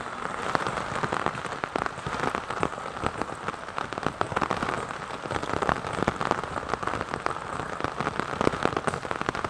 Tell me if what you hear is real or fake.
real